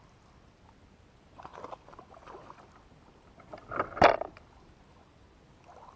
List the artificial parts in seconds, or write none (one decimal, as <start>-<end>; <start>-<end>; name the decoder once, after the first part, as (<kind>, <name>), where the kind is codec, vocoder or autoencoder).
none